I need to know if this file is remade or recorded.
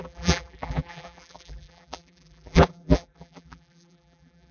remade